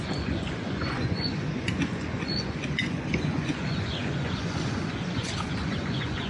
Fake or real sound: fake